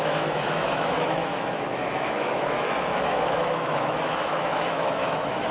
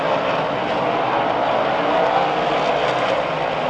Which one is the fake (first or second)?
first